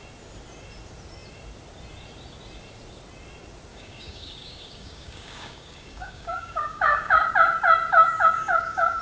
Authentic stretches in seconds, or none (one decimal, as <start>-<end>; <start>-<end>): 0.0-3.7; 7.3-7.9